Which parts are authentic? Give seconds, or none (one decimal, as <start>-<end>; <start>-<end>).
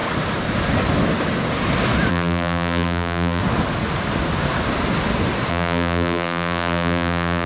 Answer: 0.0-2.1; 3.4-5.5